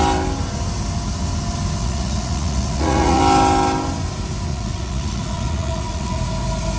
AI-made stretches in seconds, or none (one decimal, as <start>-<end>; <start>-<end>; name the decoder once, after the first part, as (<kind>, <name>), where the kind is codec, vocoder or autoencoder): 1.8-3.2 (vocoder, Vocos); 4.5-6.2